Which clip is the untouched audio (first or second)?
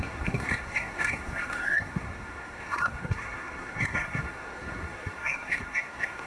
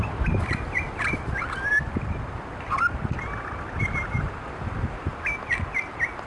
second